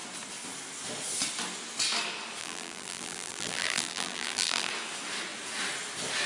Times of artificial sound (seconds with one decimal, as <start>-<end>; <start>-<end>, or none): 2.4-4.7